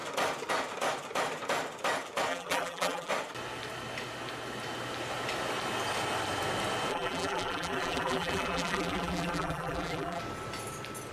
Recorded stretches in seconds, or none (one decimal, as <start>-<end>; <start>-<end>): 0.0-2.3; 3.1-6.9; 10.2-11.1